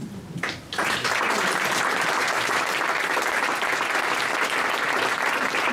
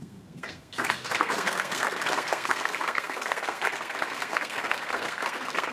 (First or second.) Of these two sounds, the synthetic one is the second